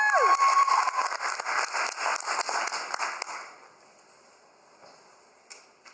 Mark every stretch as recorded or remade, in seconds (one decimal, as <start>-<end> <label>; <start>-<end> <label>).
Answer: 0.0-0.5 recorded; 0.5-1.2 remade; 1.2-5.9 recorded